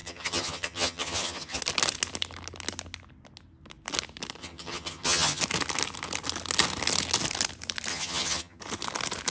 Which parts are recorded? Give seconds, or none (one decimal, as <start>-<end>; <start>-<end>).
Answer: 1.6-4.4; 5.4-7.9; 8.6-9.3

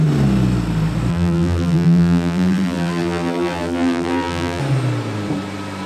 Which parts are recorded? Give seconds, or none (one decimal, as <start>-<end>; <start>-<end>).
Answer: 0.0-1.1; 4.6-5.9

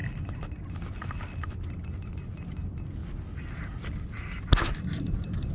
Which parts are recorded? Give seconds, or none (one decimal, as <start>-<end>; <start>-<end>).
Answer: 0.0-5.5

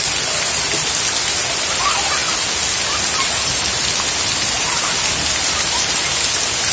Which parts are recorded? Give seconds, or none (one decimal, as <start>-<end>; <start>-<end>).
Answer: 0.0-6.7

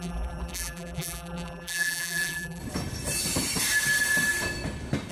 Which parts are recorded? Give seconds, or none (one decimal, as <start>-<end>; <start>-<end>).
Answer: 2.6-5.1